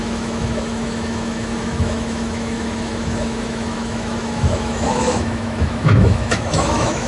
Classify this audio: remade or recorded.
remade